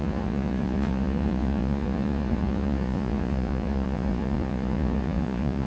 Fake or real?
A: fake